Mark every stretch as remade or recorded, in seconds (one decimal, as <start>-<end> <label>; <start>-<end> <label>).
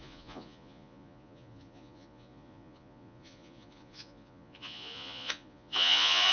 0.0-6.3 remade